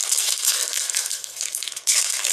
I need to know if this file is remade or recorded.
remade